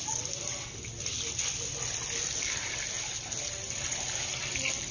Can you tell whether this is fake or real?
real